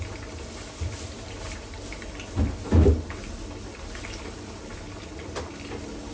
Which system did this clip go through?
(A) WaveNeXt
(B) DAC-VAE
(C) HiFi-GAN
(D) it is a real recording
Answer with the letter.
D